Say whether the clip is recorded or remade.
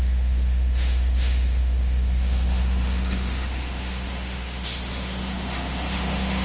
remade